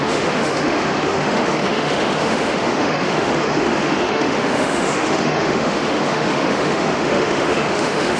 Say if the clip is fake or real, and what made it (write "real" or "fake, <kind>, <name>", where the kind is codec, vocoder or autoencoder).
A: fake, autoencoder, DAC-VAE